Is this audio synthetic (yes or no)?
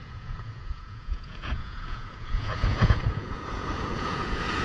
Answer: yes